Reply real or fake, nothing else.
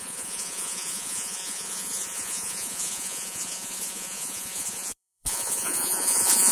fake